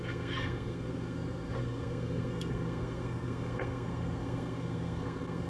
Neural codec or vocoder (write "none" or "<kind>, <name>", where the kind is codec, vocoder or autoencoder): codec, SNAC